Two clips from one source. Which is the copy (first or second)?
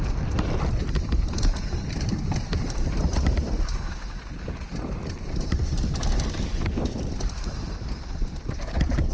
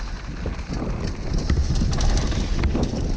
first